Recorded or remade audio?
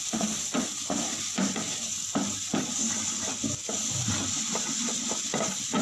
recorded